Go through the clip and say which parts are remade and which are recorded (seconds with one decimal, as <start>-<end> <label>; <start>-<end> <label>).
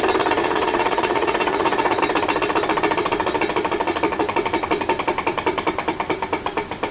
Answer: 0.0-0.4 recorded; 0.4-2.0 remade; 2.0-6.9 recorded